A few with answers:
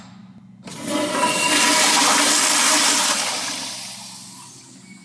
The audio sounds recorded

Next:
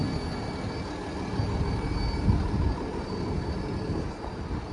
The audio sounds recorded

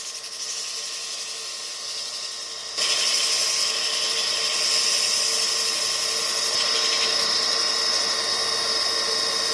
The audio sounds recorded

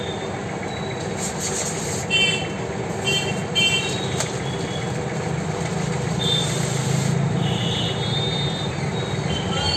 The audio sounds recorded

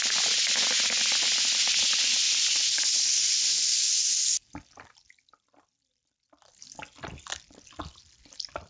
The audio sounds recorded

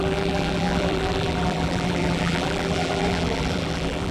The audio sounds remade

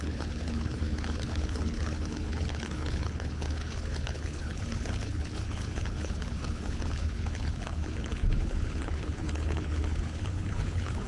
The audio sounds remade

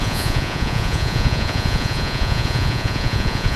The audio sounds remade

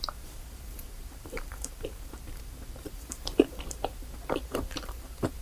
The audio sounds remade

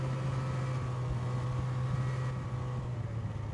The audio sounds recorded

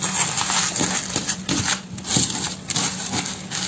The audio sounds recorded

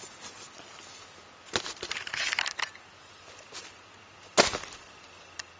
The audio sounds recorded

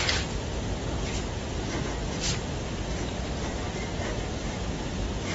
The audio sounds recorded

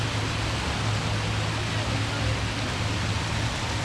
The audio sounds recorded